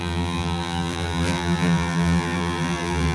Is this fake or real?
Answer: fake